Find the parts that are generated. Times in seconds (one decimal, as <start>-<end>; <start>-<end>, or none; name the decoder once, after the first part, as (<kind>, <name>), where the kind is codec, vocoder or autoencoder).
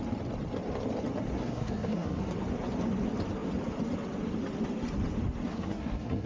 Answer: 1.4-2.2 (codec, SNAC); 5.5-6.3